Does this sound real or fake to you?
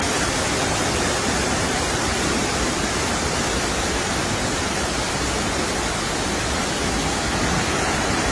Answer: real